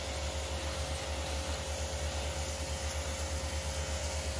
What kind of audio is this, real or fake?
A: real